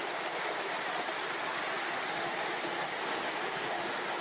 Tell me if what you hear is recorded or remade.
recorded